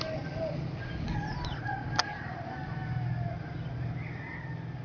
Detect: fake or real real